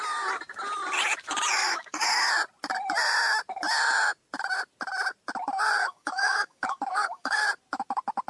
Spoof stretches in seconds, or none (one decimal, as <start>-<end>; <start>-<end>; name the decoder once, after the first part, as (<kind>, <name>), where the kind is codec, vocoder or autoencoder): 1.6-2.3 (codec, DAC); 5.8-7.4